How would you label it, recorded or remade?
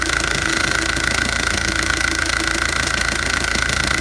remade